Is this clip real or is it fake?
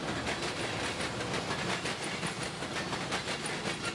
fake